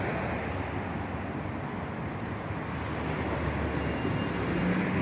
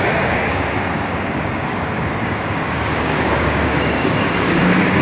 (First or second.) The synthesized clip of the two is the second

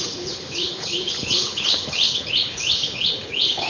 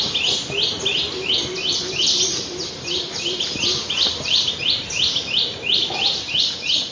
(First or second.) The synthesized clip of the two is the first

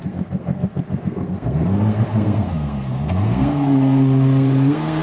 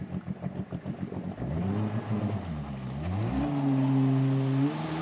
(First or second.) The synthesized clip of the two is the first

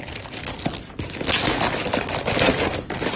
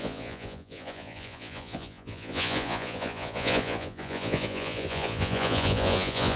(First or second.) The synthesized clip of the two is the second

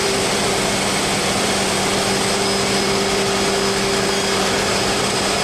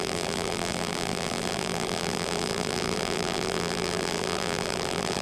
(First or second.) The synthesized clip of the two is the second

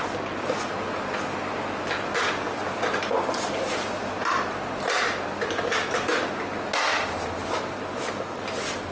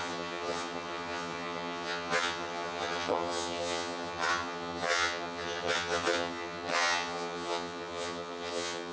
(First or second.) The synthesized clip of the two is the second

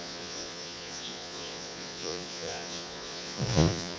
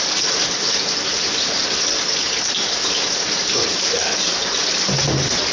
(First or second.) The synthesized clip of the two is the first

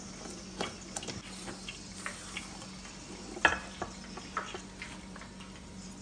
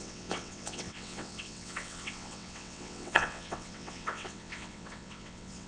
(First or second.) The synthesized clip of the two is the second